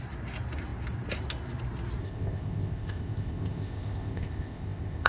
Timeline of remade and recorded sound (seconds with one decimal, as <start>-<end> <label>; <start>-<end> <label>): 0.0-2.0 recorded; 2.0-5.1 remade